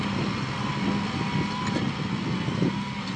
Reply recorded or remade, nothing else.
recorded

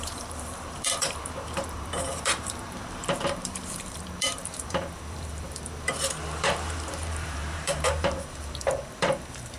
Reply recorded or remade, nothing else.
remade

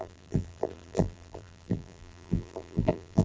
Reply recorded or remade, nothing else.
remade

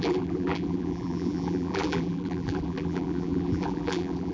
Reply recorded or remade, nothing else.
remade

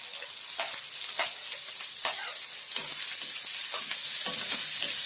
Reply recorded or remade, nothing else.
recorded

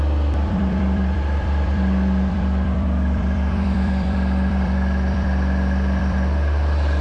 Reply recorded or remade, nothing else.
remade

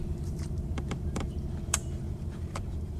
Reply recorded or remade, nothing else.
remade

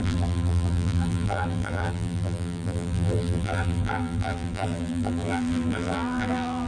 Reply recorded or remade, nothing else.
remade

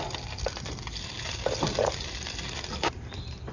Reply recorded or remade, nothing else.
remade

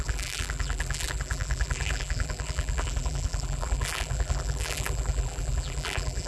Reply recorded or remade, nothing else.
remade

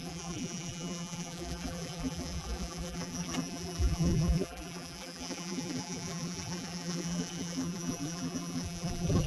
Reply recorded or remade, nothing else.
remade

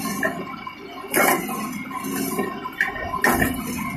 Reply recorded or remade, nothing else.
recorded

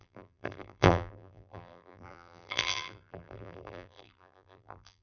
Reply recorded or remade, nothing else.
remade